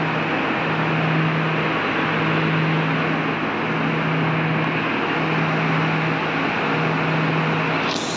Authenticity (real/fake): real